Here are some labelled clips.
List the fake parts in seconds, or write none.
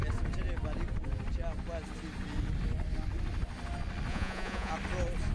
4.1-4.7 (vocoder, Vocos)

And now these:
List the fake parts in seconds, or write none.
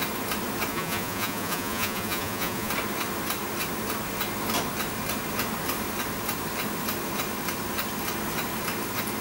0.7-2.7 (vocoder, Vocos)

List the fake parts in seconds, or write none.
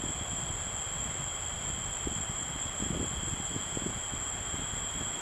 3.5-4.0 (vocoder, Vocos)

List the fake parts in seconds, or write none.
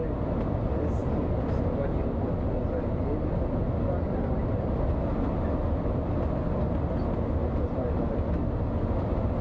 none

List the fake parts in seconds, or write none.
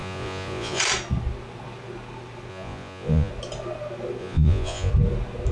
0.0-0.8 (vocoder, Vocos); 2.5-3.3; 4.2-4.9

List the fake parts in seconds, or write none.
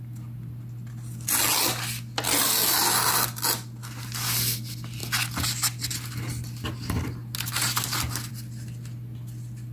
none